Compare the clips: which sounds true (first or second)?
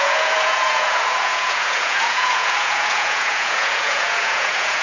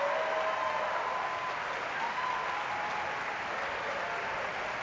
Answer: second